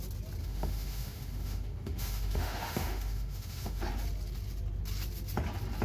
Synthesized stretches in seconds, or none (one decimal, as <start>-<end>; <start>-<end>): 0.4-3.9